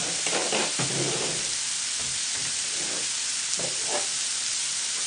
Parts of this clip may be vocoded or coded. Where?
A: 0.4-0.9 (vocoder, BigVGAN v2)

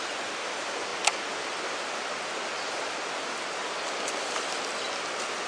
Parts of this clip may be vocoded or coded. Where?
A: none

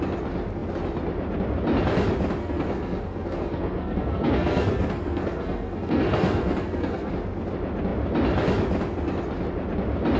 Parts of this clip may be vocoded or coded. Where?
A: 2.4-7.1 (codec, SNAC)

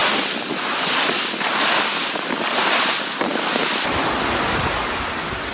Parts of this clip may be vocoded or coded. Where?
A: none

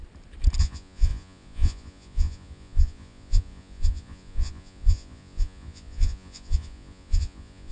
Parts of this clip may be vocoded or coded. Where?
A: 0.6-7.7 (vocoder, Vocos)